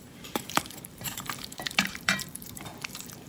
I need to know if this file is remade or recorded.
remade